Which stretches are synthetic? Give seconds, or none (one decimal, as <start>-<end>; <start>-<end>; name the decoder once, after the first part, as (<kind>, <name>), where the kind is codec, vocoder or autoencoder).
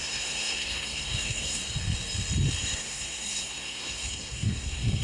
0.0-1.6 (codec, SNAC); 2.6-5.0